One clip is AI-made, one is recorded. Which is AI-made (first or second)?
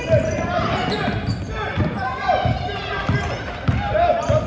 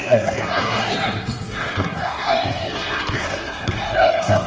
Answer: second